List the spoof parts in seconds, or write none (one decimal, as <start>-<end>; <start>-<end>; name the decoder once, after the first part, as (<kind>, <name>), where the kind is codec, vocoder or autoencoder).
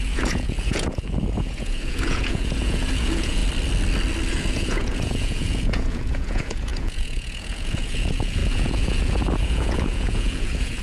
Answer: 0.0-3.4 (vocoder, Vocos); 4.3-10.8